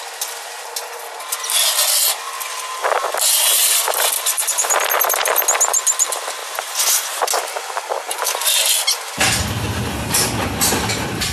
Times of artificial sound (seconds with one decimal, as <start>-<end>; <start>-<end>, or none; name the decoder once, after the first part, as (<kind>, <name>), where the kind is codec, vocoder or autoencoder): 6.4-7.2 (vocoder, BigVGAN v2)